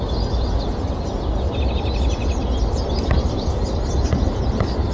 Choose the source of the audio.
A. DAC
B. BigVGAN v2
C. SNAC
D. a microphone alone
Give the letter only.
D